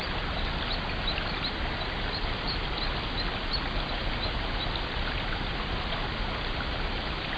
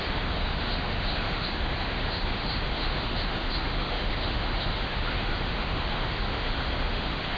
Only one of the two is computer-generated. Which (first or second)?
second